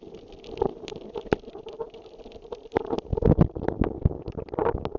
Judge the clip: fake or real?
real